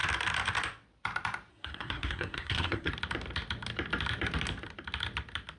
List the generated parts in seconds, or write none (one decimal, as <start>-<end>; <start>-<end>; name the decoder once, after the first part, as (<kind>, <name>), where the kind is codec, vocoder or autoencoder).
1.5-2.9 (codec, SNAC)